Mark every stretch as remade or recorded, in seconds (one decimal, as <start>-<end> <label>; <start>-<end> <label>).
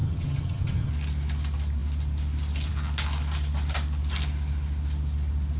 0.0-0.9 remade; 0.9-5.6 recorded